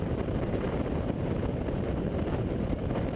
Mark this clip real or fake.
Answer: fake